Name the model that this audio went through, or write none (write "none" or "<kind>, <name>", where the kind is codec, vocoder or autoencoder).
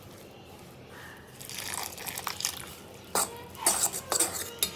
none